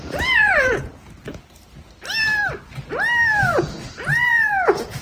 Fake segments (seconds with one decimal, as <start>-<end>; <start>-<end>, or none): 0.0-0.9; 3.4-5.0